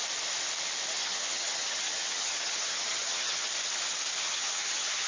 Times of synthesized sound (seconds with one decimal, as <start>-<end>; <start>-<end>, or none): 1.0-3.5; 4.2-5.1